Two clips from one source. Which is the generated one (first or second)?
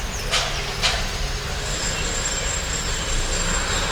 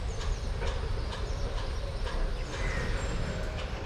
second